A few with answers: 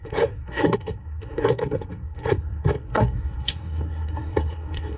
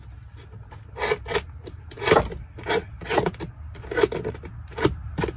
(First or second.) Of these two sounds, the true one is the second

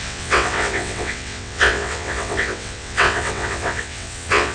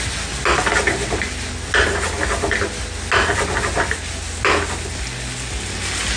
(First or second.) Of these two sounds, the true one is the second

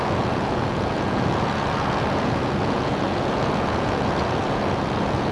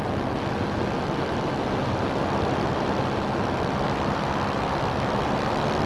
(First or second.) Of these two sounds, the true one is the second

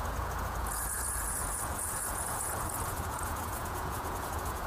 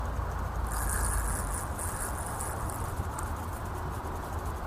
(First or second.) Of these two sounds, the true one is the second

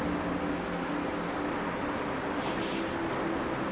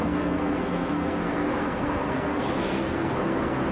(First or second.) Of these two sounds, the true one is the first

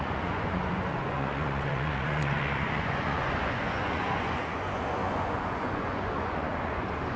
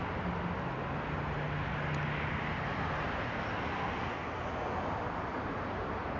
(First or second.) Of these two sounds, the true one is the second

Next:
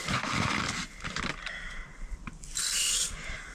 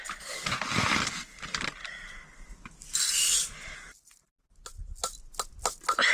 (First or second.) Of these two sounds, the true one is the second